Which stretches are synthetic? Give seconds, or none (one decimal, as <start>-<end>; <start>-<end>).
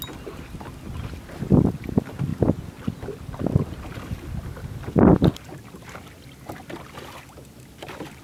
none